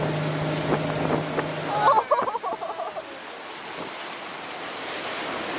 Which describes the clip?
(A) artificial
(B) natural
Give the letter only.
B